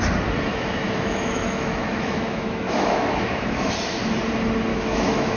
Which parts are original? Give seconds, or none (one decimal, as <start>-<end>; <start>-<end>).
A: 0.0-0.5; 3.7-4.7

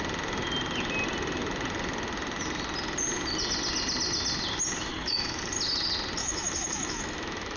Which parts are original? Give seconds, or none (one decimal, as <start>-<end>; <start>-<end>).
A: 0.0-4.9; 5.4-6.2

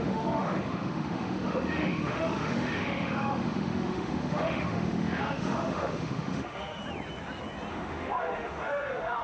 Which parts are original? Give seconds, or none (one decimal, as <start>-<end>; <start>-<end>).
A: 6.8-7.7

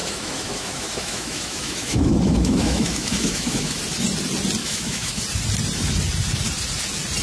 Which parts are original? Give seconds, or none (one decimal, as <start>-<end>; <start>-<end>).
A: 3.8-4.6; 5.2-7.2

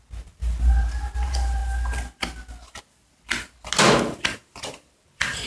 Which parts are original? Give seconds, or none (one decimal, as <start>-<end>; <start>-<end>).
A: 0.0-5.5

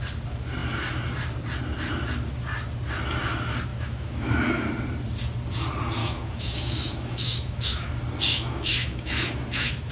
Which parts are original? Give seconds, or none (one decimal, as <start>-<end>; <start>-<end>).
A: 0.0-3.7; 4.7-6.0; 7.9-8.3

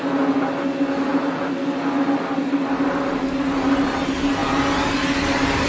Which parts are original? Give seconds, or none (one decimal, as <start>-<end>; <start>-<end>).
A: 0.0-5.7